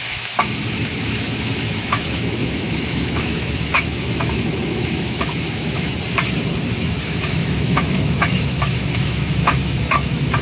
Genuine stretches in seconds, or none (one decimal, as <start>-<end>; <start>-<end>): 5.9-7.0